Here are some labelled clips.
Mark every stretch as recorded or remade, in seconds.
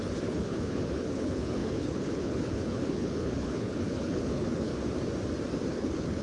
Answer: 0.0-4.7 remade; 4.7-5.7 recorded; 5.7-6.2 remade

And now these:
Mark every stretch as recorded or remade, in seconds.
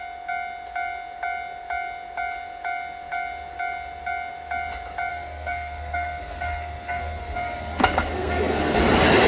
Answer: 0.0-5.1 recorded; 5.1-8.8 remade; 8.8-9.3 recorded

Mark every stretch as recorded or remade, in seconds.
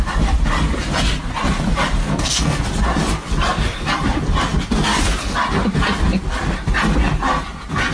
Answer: 0.0-2.0 recorded; 2.0-2.6 remade; 2.6-7.9 recorded